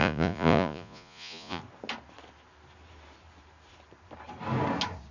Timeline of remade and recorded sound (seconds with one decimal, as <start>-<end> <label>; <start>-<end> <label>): 0.0-1.6 remade; 1.6-5.1 recorded